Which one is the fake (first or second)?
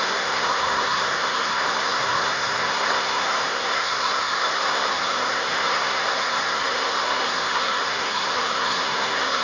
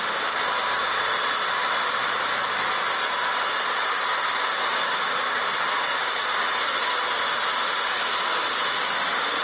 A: first